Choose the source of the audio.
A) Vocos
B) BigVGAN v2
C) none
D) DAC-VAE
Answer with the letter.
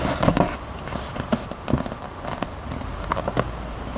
C